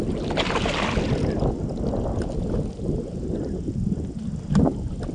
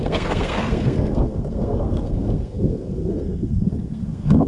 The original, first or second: first